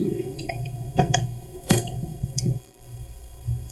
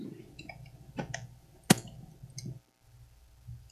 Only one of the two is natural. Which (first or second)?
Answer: second